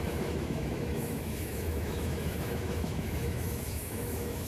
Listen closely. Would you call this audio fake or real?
fake